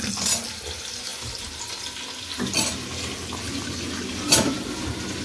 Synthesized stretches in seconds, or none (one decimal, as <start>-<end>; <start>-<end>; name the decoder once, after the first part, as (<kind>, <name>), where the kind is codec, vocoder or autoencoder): none